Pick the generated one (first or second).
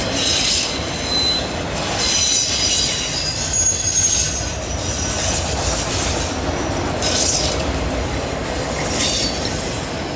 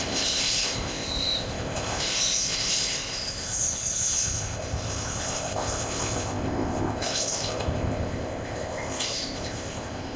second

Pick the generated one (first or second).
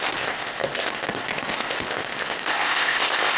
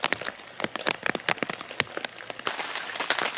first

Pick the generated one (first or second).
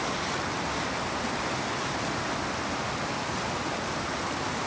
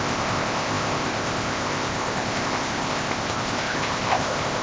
second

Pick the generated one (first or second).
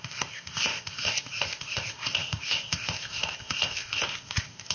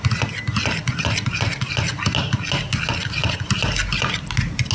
first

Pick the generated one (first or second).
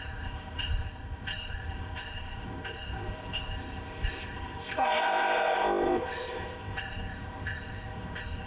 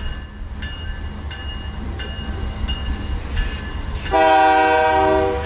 first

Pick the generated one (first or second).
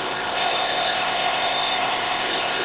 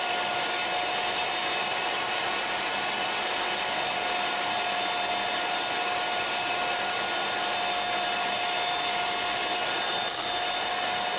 first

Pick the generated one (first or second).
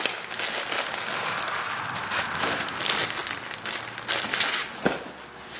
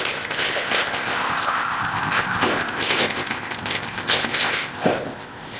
second